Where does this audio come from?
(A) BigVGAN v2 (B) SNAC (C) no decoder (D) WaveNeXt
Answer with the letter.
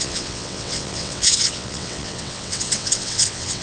D